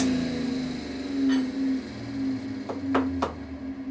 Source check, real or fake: real